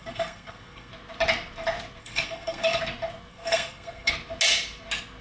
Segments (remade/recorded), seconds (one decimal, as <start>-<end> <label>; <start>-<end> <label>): 0.0-0.9 remade; 0.9-2.0 recorded; 2.0-2.8 remade; 2.8-3.3 recorded; 3.3-4.1 remade; 4.1-5.2 recorded